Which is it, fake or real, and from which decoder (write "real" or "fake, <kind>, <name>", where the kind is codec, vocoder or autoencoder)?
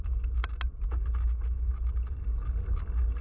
real